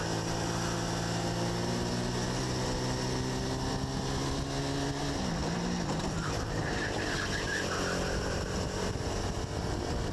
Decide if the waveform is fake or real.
real